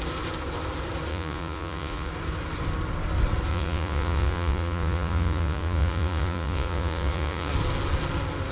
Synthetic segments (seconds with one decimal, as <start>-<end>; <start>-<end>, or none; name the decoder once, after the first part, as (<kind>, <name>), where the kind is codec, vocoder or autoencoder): 1.1-2.1 (vocoder, Vocos); 3.5-7.5